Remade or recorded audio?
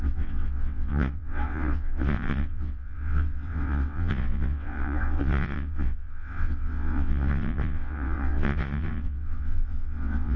remade